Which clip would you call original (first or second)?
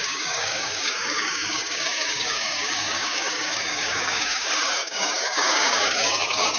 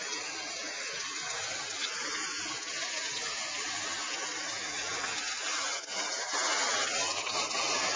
second